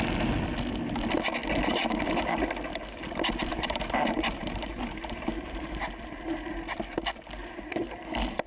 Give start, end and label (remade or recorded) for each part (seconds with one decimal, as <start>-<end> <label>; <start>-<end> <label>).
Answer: 0.0-3.5 recorded; 3.5-5.8 remade; 5.8-7.4 recorded; 7.4-8.1 remade; 8.1-8.5 recorded